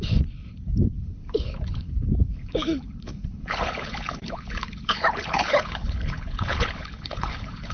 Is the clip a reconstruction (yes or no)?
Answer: yes